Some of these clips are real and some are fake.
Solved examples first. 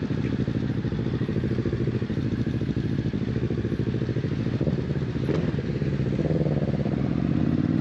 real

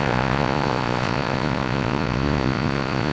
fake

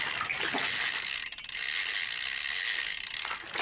real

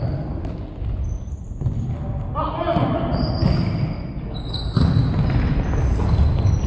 real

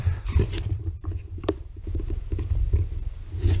fake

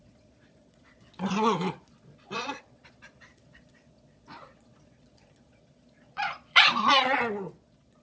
fake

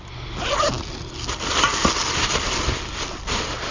real